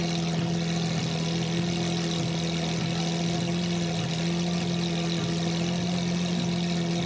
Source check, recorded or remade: recorded